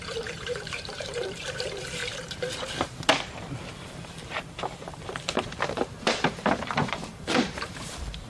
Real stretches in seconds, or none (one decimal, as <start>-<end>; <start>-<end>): 2.0-3.4

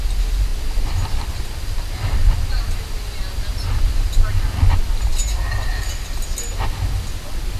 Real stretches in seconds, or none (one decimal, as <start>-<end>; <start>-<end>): 0.0-7.6